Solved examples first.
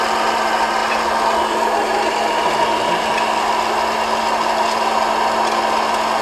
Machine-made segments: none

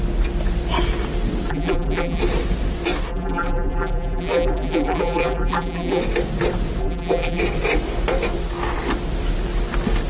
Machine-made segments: 1.5-2.2 (vocoder, BigVGAN v2); 3.1-6.0; 6.8-7.4

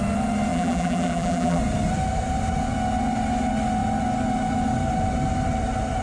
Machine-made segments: 0.5-1.6 (vocoder, BigVGAN v2)

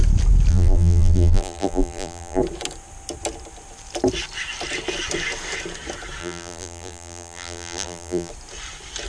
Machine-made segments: 0.5-2.4 (vocoder, BigVGAN v2); 6.2-8.3

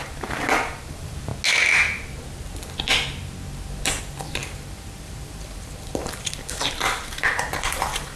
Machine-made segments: 0.0-1.3 (vocoder, BigVGAN v2); 4.0-8.2

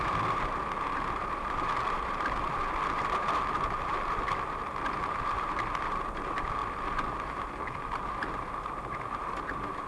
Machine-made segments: 0.0-9.9 (vocoder, BigVGAN v2)

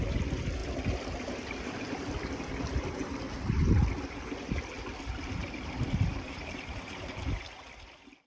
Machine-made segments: 5.4-7.4 (vocoder, BigVGAN v2)